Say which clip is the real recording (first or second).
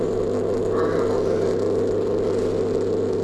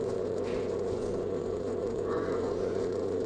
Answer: first